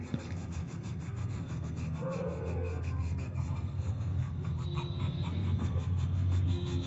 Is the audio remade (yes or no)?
yes